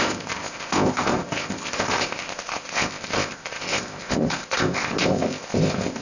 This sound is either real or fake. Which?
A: fake